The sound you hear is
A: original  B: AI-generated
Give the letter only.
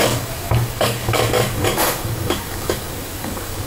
B